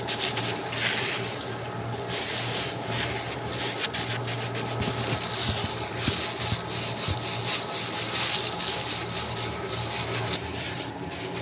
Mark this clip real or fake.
real